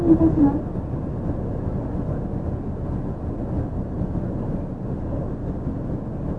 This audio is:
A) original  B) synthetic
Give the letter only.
A